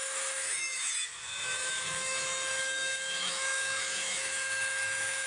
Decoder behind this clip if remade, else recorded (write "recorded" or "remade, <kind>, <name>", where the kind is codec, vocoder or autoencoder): remade, autoencoder, DAC-VAE